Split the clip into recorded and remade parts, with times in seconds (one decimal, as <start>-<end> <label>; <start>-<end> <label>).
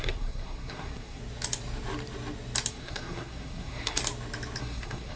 0.0-1.2 remade; 1.2-2.7 recorded; 2.7-4.0 remade; 4.0-4.6 recorded; 4.6-5.2 remade